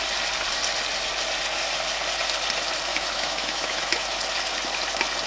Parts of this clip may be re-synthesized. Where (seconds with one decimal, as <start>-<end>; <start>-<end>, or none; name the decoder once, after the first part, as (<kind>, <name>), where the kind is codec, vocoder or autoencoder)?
2.9-4.2 (autoencoder, DAC-VAE)